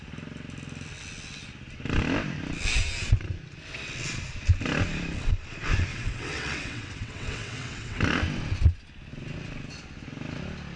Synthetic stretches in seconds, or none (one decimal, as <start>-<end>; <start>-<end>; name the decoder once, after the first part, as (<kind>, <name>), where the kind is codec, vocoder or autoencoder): 5.9-8.0 (vocoder, WaveNeXt)